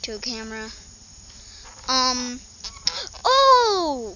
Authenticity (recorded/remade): recorded